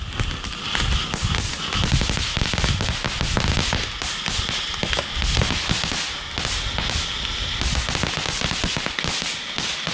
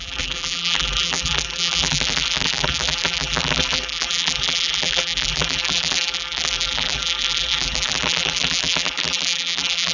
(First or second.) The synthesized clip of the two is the second